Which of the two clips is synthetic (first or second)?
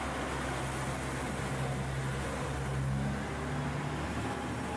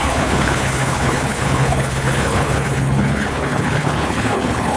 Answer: second